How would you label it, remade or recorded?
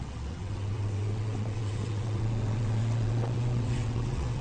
remade